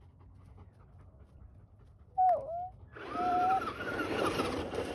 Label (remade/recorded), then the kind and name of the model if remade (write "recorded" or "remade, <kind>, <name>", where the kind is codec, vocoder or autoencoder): recorded